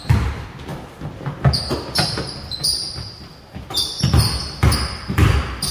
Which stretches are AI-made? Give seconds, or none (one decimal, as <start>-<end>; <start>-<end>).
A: none